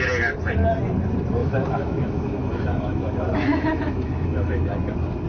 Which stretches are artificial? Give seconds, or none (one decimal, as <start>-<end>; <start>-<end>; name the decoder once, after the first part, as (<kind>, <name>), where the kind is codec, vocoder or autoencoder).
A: 1.4-4.6 (autoencoder, DAC-VAE)